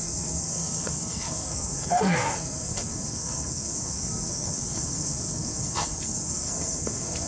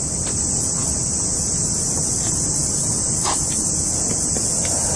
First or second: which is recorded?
second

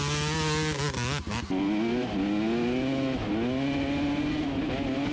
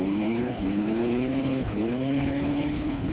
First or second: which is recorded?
first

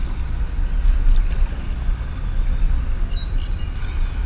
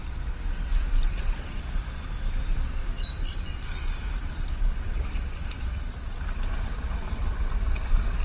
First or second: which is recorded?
first